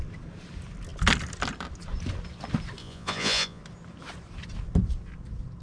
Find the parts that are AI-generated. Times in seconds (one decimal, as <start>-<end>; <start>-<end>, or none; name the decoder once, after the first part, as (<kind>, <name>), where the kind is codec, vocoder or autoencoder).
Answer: 2.8-3.6 (vocoder, Vocos)